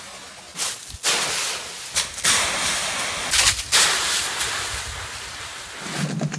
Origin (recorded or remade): recorded